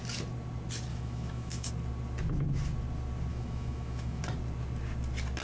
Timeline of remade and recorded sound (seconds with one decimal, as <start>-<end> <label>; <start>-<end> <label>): 0.0-0.9 recorded; 0.9-1.7 remade; 1.7-3.3 recorded; 3.3-4.2 remade; 4.2-5.4 recorded